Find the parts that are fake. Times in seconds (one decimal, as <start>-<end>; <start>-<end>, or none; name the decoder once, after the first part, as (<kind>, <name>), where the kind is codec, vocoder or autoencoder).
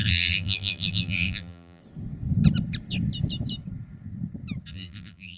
0.0-1.8 (vocoder, BigVGAN v2); 4.7-5.4